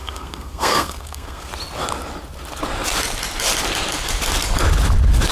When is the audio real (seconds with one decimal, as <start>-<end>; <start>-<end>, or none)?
1.5-5.3